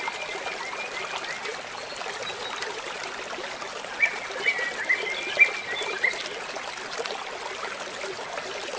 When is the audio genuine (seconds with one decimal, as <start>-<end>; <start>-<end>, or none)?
0.0-8.8